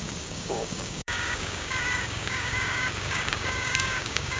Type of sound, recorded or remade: remade